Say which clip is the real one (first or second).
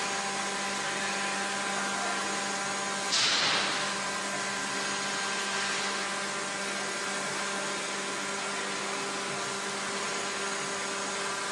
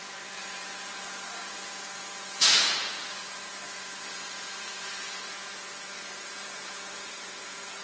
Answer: first